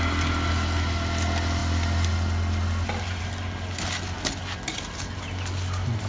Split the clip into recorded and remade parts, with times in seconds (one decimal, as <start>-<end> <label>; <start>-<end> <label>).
0.0-6.1 recorded